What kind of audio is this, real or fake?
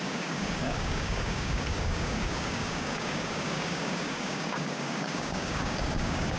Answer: fake